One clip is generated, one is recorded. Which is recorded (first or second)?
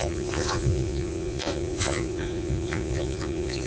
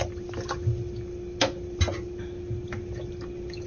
second